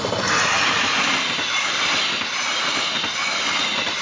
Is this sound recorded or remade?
recorded